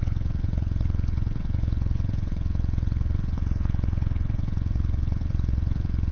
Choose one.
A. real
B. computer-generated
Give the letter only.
B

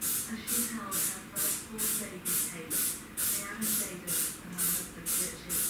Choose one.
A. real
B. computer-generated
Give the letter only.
A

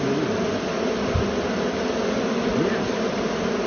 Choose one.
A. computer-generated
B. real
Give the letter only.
B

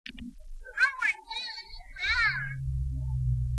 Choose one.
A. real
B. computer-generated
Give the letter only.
A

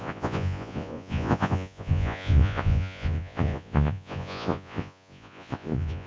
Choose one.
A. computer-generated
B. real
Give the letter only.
A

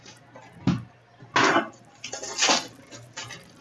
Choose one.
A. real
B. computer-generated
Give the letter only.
A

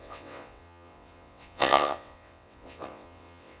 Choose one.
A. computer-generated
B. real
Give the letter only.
A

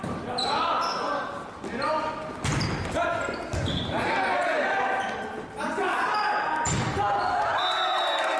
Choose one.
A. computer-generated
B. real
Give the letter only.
B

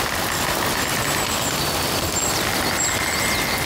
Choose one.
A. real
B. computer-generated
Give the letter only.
A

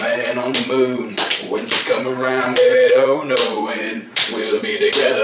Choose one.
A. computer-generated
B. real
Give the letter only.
A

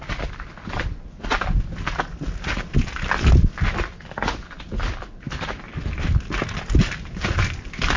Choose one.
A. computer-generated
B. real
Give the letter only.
B